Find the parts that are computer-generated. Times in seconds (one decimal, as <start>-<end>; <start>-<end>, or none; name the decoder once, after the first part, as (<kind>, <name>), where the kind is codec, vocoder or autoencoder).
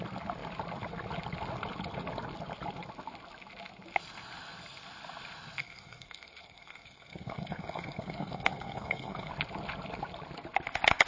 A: 5.6-9.3 (codec, SNAC)